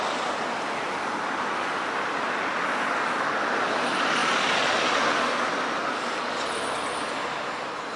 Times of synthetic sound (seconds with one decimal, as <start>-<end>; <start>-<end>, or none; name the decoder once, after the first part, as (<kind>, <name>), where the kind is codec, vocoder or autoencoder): none